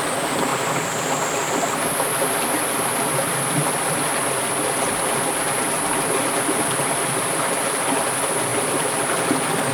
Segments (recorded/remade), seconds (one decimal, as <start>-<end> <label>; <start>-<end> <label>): 0.0-9.7 recorded